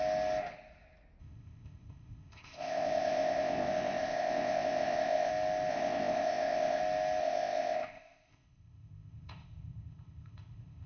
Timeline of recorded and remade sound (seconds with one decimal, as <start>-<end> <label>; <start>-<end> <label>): 0.0-1.2 recorded; 1.2-5.3 remade; 5.3-5.7 recorded; 5.7-6.8 remade; 6.8-7.2 recorded; 7.2-10.9 remade